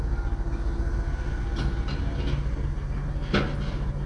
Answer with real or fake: real